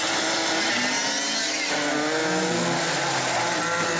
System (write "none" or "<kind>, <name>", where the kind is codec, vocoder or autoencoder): none